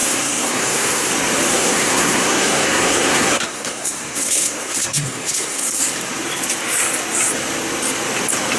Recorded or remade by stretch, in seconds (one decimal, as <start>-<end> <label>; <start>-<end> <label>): 0.0-1.1 remade; 1.1-1.5 recorded; 1.5-5.7 remade; 5.7-8.6 recorded